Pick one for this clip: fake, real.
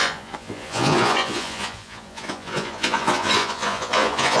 fake